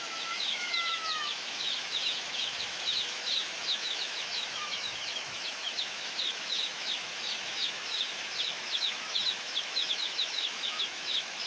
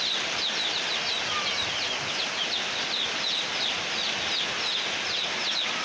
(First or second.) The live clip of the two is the second